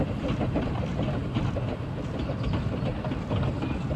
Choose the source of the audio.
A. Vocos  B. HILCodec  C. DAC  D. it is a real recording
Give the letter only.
D